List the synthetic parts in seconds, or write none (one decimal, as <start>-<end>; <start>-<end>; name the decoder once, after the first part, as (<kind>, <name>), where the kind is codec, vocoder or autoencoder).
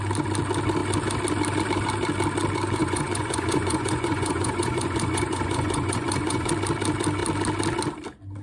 2.8-6.5 (vocoder, Vocos)